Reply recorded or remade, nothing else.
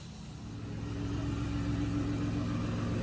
recorded